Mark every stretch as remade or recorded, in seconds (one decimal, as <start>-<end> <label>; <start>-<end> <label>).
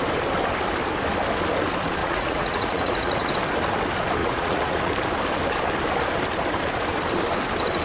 0.0-2.0 recorded; 2.0-3.3 remade; 3.3-4.2 recorded; 4.2-4.9 remade; 4.9-7.8 recorded